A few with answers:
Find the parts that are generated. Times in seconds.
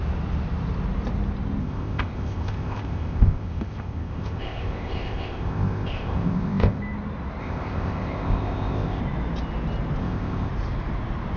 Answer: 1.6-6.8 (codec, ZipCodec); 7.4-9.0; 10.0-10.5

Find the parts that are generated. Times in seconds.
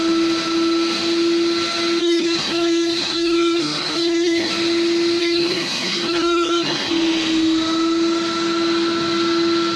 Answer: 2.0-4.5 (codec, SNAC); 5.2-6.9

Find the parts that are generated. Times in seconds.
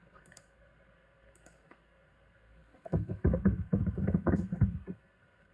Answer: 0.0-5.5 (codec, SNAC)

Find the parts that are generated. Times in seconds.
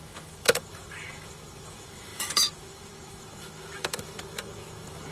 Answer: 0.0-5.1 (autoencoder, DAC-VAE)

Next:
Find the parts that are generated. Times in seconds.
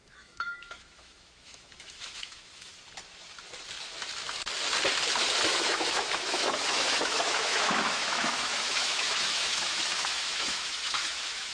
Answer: 0.0-2.7 (autoencoder, DAC-VAE); 5.5-11.5